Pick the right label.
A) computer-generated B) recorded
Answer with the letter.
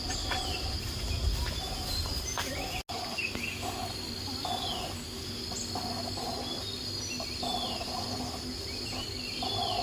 B